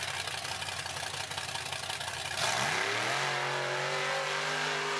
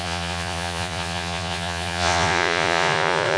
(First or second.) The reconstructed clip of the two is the second